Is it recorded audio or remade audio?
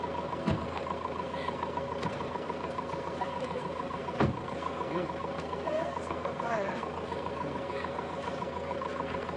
remade